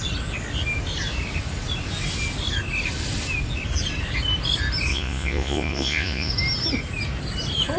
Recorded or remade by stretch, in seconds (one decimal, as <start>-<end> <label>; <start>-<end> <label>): 0.0-4.9 recorded; 4.9-6.3 remade; 6.3-7.8 recorded